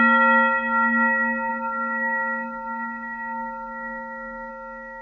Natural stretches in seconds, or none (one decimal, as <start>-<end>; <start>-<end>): 0.0-1.5; 4.5-5.0